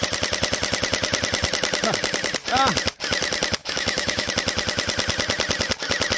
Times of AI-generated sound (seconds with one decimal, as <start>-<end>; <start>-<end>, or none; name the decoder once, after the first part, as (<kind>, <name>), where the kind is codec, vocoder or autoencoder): 3.6-4.3 (autoencoder, DAC-VAE)